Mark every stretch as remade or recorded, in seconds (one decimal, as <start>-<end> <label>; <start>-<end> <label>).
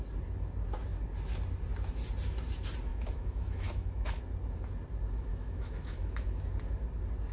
0.0-2.9 recorded; 2.9-4.2 remade; 4.2-5.3 recorded; 5.3-6.4 remade; 6.4-7.3 recorded